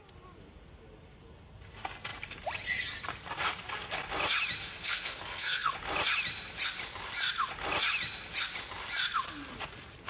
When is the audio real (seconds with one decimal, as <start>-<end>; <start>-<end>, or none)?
0.0-4.6; 5.7-10.1